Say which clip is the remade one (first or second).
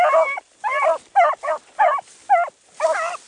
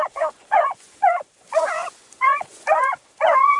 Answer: second